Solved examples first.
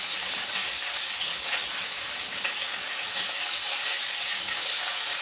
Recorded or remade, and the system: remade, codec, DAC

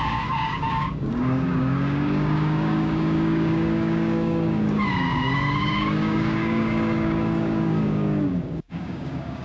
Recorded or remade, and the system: remade, codec, DAC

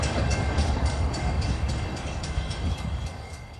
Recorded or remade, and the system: remade, codec, DAC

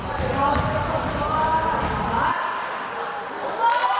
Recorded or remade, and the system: recorded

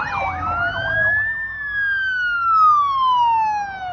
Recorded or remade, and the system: recorded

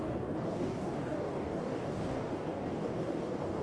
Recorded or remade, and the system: remade, codec, DAC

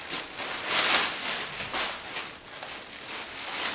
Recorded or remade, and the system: recorded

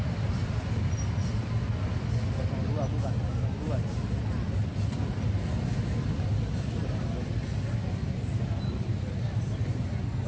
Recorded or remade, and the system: recorded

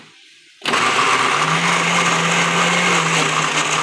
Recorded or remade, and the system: recorded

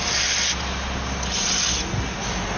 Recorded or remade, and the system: recorded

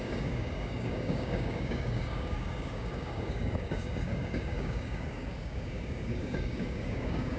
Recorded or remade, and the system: remade, codec, DAC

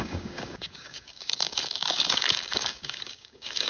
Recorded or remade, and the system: remade, codec, DAC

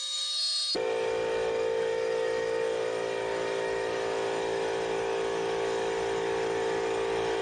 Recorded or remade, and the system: remade, codec, DAC